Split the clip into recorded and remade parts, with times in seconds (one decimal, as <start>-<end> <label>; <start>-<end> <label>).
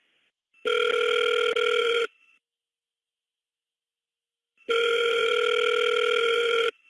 0.0-1.8 recorded; 1.8-5.3 remade; 5.3-6.2 recorded; 6.2-6.9 remade